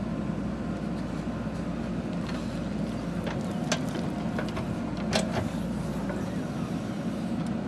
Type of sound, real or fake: real